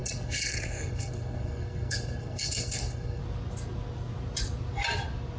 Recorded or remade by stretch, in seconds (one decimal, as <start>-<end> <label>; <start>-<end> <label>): 0.0-3.2 remade; 3.2-5.4 recorded